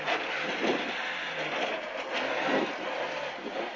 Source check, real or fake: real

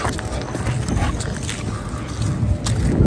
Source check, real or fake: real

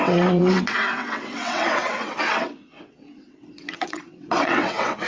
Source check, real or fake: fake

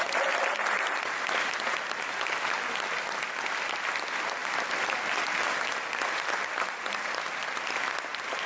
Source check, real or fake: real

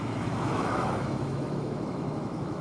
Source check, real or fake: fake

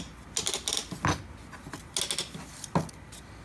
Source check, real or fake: real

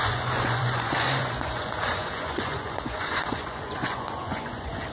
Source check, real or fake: fake